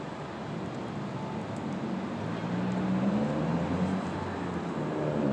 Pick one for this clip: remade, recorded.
recorded